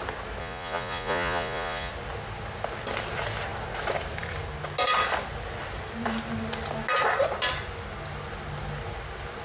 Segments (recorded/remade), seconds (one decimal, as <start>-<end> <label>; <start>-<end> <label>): 0.0-0.4 recorded; 0.4-1.9 remade; 1.9-9.4 recorded